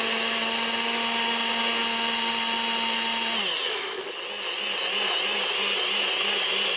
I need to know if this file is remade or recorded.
recorded